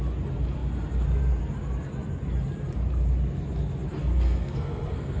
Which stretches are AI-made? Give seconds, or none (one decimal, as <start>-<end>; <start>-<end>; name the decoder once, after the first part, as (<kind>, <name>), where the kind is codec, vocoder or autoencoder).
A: 4.0-5.2 (codec, SNAC)